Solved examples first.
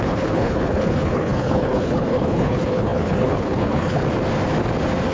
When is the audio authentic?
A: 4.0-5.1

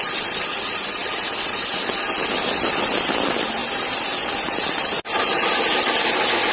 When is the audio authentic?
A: 0.0-6.5

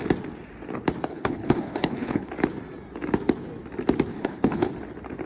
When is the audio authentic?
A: 0.0-1.1; 2.3-4.1; 4.7-5.3